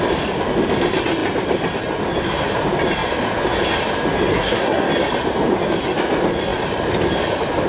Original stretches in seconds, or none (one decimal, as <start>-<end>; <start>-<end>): 0.0-4.3; 4.9-7.7